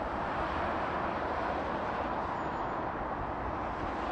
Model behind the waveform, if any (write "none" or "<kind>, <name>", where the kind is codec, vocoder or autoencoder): none